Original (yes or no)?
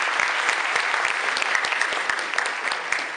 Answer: yes